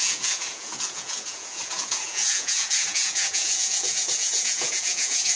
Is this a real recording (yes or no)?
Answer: no